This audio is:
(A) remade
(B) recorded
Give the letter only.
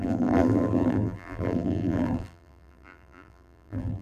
A